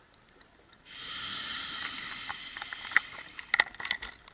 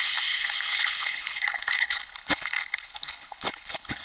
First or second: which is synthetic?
second